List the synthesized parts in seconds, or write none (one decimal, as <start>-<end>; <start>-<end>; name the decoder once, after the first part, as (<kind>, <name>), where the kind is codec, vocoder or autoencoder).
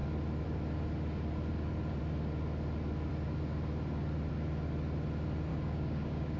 5.5-6.4 (codec, DAC)